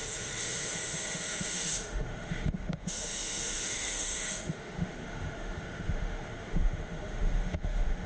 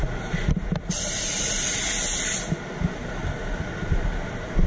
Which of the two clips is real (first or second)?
second